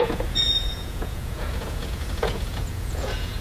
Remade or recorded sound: remade